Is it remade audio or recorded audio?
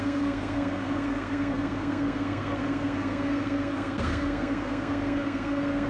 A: remade